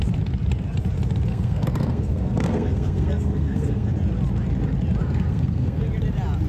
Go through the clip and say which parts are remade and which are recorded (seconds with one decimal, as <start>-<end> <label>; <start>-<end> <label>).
0.0-1.3 recorded; 1.3-3.9 remade; 3.9-5.0 recorded; 5.0-5.8 remade; 5.8-6.5 recorded